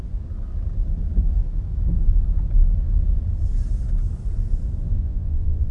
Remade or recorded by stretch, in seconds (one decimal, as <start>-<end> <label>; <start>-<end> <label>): 0.0-5.0 recorded; 5.0-5.7 remade